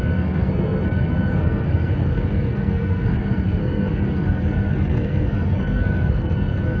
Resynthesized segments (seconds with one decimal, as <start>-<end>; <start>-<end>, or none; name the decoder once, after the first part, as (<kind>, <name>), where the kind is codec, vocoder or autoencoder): 0.0-6.8 (codec, SNAC)